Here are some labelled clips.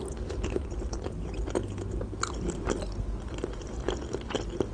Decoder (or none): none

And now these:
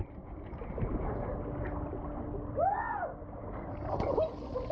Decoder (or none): none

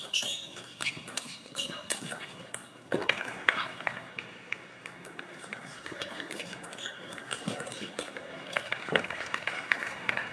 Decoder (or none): codec, SNAC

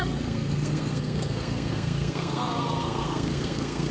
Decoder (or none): codec, SNAC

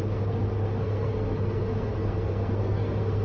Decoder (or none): codec, SNAC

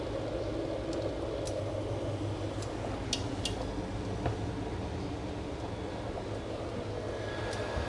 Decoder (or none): none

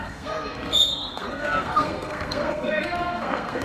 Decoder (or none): codec, SNAC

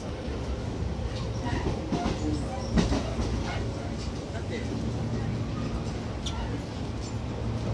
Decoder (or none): none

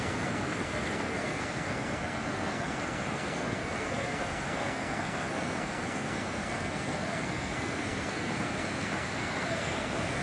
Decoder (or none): codec, SNAC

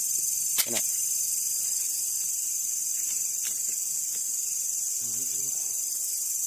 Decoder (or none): none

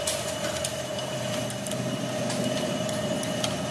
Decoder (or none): none